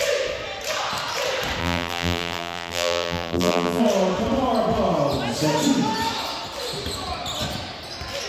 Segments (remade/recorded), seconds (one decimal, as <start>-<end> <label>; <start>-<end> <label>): 0.0-1.6 recorded; 1.6-3.8 remade; 3.8-8.3 recorded